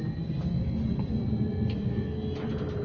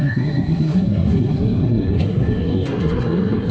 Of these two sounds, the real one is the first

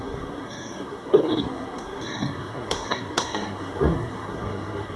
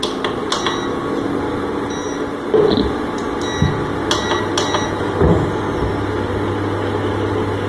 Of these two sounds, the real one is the second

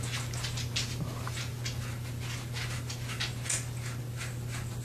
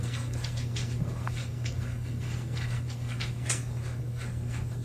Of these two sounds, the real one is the first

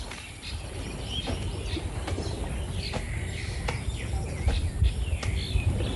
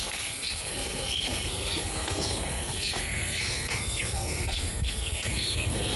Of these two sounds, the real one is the first